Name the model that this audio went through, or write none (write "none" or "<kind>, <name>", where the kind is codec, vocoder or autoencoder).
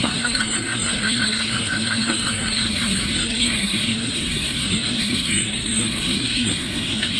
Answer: codec, SNAC